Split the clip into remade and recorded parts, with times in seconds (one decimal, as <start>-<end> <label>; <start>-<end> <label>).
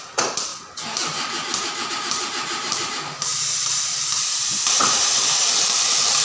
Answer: 0.0-0.5 remade; 0.5-1.9 recorded; 1.9-6.2 remade